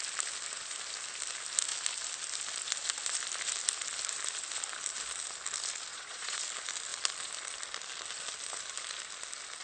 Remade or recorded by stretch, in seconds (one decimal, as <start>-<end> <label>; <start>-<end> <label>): 0.0-5.9 recorded; 5.9-6.4 remade; 6.4-9.6 recorded